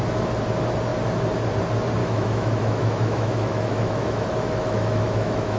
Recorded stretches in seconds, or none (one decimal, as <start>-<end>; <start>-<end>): 0.0-2.0